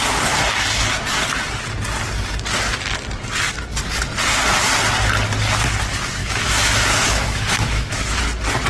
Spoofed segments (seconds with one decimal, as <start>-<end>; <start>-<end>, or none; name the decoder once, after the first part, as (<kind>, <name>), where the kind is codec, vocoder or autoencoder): 6.2-8.2 (autoencoder, DAC-VAE)